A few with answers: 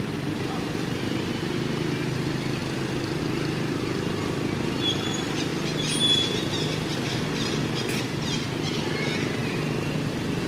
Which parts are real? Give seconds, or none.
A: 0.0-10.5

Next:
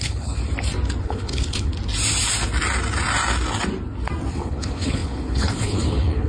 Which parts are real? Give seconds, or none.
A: 0.4-1.0; 1.7-4.3